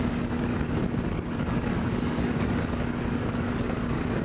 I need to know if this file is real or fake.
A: fake